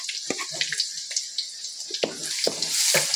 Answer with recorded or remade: recorded